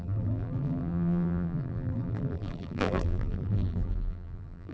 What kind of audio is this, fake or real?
fake